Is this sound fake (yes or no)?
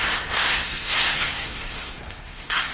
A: yes